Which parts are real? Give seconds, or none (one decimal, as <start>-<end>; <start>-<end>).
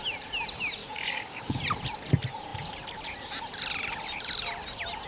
0.0-0.8; 1.6-5.1